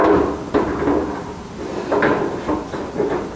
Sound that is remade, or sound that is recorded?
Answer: recorded